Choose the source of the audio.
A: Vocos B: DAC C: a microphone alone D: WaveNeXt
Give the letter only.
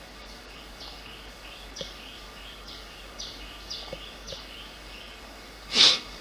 B